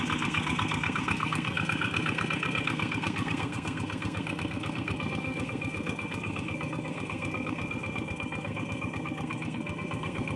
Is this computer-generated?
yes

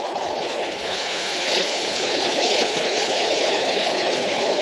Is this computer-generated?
yes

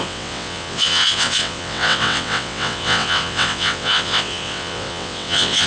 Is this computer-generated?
yes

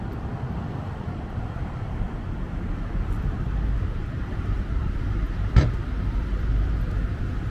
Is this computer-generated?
yes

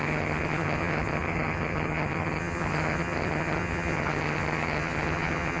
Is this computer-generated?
yes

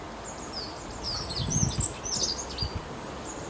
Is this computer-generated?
no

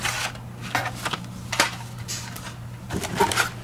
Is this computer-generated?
no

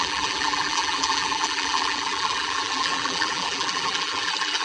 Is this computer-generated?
yes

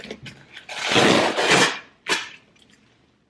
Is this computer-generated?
no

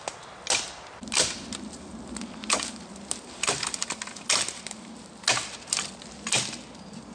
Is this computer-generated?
no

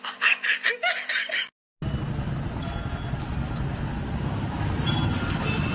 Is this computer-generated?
no